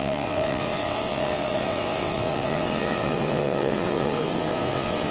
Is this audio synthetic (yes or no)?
yes